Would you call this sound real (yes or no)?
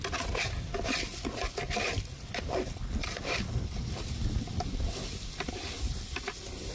yes